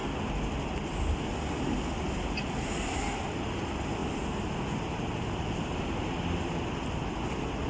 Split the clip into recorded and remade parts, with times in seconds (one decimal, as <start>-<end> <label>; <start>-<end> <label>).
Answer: 0.0-7.7 recorded